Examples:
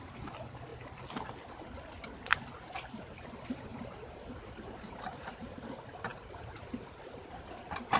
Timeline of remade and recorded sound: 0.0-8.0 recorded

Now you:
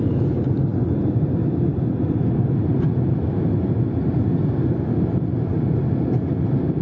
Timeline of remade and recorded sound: 0.0-6.8 recorded

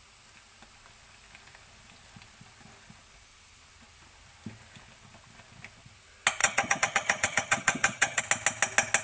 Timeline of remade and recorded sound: 0.0-6.4 recorded; 6.4-8.2 remade; 8.2-9.0 recorded

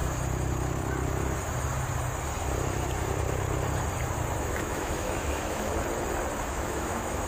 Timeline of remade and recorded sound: 0.0-4.4 recorded; 4.4-5.7 remade; 5.7-6.5 recorded; 6.5-7.3 remade

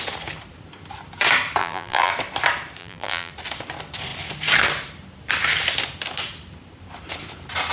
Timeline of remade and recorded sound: 0.0-1.6 recorded; 1.6-2.1 remade; 2.1-2.8 recorded; 2.8-3.3 remade; 3.3-7.7 recorded

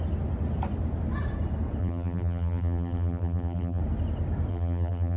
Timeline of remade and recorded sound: 0.0-1.8 recorded; 1.8-3.8 remade; 3.8-4.5 recorded; 4.5-5.2 remade